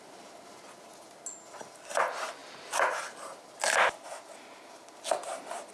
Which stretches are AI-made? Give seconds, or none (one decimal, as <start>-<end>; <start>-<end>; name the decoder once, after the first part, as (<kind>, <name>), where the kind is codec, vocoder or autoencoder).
none